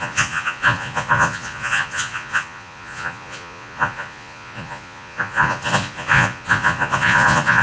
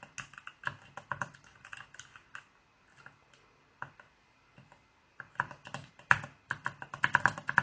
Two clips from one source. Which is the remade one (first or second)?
first